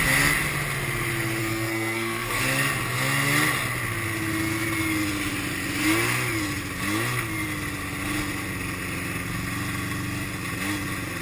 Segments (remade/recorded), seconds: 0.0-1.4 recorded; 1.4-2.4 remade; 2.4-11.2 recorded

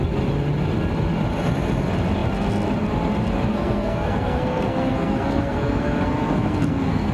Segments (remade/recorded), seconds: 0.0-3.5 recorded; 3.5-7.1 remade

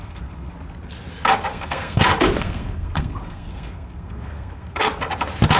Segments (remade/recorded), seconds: 0.0-0.5 remade; 0.5-1.5 recorded; 1.5-2.0 remade; 2.0-2.4 recorded; 2.4-4.9 remade; 4.9-5.6 recorded

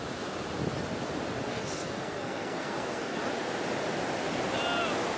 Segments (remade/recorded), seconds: 0.0-1.5 recorded; 1.5-3.2 remade; 3.2-5.2 recorded